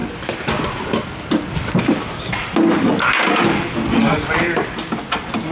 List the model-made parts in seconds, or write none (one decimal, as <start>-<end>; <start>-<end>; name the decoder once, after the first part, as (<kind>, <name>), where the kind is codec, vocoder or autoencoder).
none